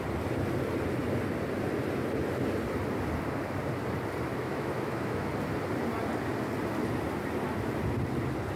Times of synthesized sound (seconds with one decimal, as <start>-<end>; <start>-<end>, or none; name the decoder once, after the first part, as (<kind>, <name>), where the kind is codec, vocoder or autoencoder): 4.3-5.3 (autoencoder, DAC-VAE)